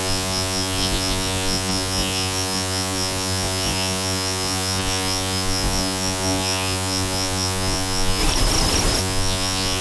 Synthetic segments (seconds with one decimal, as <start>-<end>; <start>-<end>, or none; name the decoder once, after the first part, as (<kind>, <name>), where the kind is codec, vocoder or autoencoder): 0.0-8.2 (vocoder, Vocos); 9.0-9.8

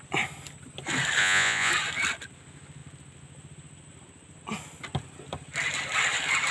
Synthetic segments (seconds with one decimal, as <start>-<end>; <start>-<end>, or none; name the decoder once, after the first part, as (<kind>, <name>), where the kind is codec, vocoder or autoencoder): 1.2-1.7 (vocoder, Vocos)

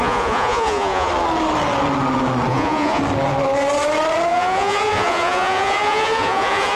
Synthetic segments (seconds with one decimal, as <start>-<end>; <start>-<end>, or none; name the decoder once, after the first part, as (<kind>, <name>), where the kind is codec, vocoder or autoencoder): 0.0-1.1 (vocoder, Vocos); 2.5-3.0; 4.3-6.8

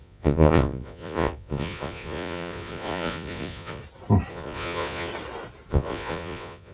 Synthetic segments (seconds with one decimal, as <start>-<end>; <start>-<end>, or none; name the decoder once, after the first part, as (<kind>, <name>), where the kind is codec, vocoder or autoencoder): 0.0-3.8 (vocoder, Vocos); 4.3-5.1; 5.7-6.7